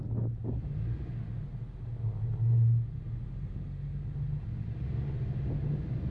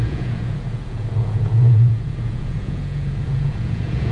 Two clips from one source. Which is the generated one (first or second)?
second